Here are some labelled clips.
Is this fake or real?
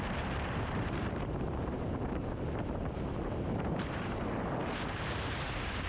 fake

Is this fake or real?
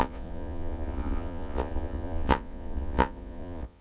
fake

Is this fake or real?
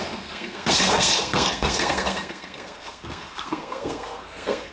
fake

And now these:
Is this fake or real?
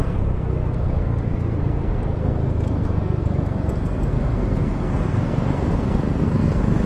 fake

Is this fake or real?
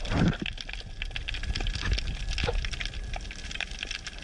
fake